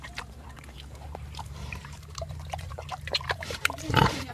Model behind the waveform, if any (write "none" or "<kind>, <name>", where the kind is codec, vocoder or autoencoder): vocoder, BigVGAN v2